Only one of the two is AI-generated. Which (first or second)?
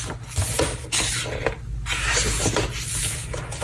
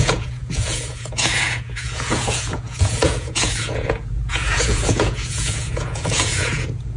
second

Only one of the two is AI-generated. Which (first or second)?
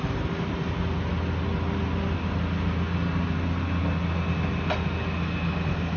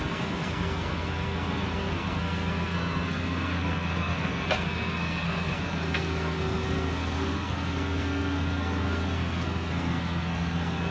second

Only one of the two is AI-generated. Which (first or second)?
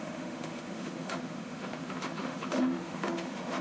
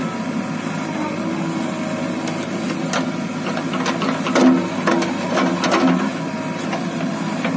first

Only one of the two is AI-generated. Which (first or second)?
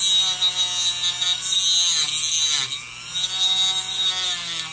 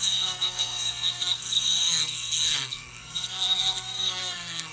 second